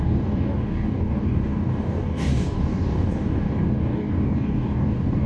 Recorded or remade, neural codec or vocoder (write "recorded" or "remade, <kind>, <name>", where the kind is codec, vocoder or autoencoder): remade, codec, DAC